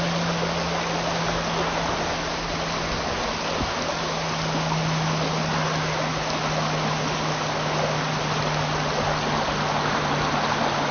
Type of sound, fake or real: real